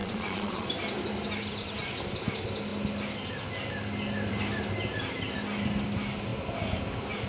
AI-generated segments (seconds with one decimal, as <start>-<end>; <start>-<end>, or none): 0.0-0.7